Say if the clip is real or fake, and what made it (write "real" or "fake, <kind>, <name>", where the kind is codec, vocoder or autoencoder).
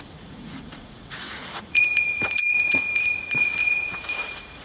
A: fake, vocoder, Vocos